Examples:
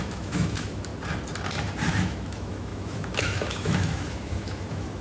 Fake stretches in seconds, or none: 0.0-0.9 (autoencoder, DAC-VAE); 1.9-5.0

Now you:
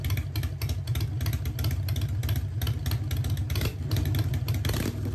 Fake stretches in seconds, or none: none

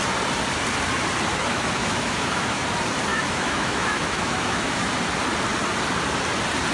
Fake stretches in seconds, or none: 1.3-2.6 (autoencoder, DAC-VAE); 3.1-4.9

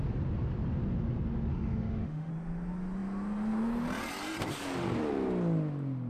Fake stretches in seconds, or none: 1.5-2.3 (autoencoder, DAC-VAE)

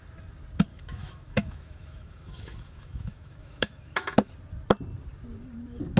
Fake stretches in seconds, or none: 0.7-4.3 (autoencoder, DAC-VAE)

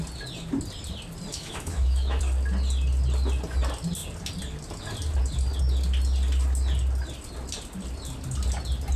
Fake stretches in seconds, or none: 1.3-2.2 (autoencoder, DAC-VAE)